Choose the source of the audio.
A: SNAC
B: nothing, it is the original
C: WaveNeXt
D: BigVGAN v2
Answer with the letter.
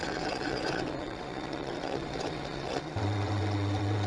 C